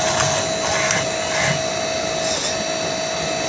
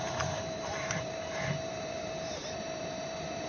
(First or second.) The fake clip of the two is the second